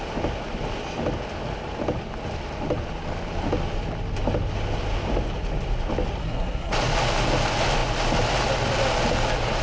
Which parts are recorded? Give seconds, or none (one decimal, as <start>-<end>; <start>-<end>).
0.0-6.2; 6.7-9.6